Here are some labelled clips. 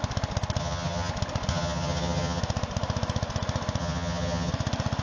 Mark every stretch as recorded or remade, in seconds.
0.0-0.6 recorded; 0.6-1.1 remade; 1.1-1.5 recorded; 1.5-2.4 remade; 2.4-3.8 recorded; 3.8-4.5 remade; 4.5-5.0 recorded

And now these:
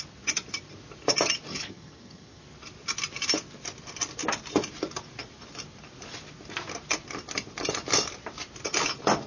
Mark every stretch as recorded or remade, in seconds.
0.0-1.5 recorded; 1.5-2.4 remade; 2.4-9.3 recorded

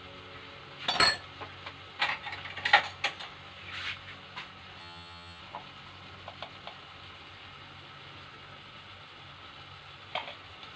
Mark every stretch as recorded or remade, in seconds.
0.0-4.8 recorded; 4.8-5.4 remade; 5.4-10.8 recorded

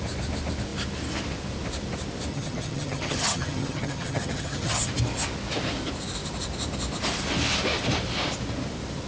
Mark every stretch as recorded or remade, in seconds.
0.0-2.3 recorded; 2.3-4.9 remade; 4.9-9.1 recorded

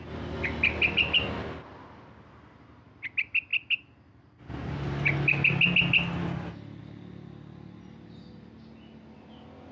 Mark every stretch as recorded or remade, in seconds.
0.0-9.7 recorded

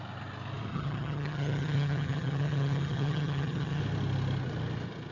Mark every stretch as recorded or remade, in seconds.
0.0-0.7 recorded; 0.7-3.8 remade; 3.8-5.1 recorded

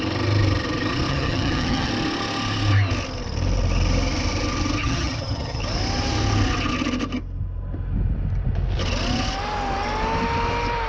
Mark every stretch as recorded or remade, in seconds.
0.0-1.1 recorded; 1.1-1.9 remade; 1.9-4.8 recorded; 4.8-5.6 remade; 5.6-10.9 recorded

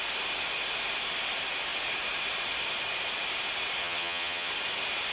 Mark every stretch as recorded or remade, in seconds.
0.0-3.8 recorded; 3.8-4.5 remade; 4.5-5.1 recorded